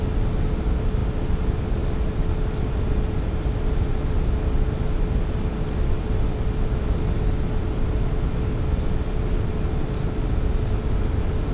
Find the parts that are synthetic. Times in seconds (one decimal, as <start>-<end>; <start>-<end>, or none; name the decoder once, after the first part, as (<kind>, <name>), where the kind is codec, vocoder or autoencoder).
none